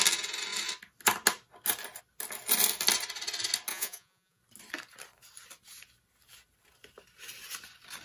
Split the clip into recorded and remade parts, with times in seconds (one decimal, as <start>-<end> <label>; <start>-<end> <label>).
0.0-3.7 recorded; 3.7-4.4 remade; 4.4-8.0 recorded